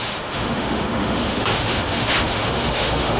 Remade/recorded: remade